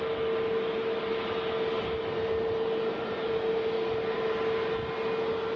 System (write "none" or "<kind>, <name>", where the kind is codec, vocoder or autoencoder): none